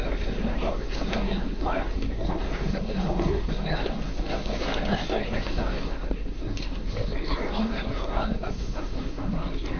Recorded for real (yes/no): no